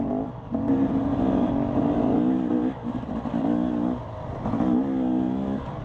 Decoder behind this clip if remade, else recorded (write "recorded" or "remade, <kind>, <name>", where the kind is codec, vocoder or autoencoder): recorded